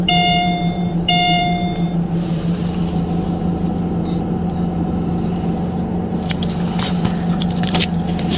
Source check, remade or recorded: remade